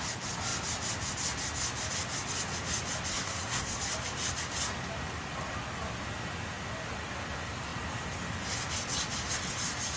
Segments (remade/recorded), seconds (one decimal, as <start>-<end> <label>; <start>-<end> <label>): 0.0-3.1 recorded; 3.1-3.8 remade; 3.8-10.0 recorded